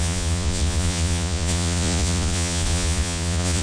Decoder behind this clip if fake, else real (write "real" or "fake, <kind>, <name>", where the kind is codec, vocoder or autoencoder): fake, vocoder, Vocos